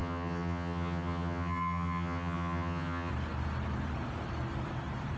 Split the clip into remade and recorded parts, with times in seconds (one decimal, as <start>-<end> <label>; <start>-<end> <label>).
0.0-3.1 remade; 3.1-5.2 recorded